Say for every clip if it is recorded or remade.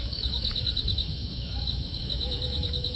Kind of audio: remade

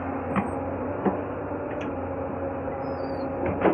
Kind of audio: recorded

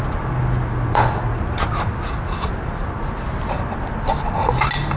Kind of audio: recorded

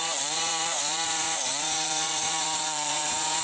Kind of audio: remade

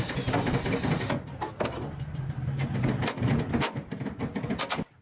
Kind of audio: recorded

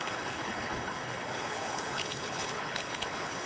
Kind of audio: remade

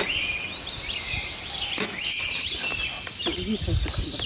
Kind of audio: recorded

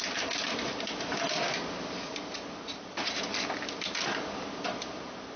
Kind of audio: recorded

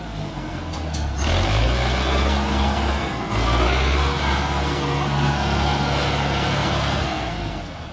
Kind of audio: remade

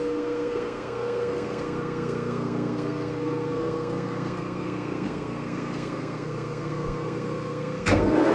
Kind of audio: remade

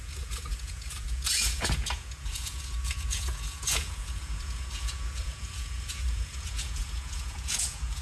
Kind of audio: remade